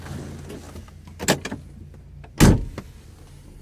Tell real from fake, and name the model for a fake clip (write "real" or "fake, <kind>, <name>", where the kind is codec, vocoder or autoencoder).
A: real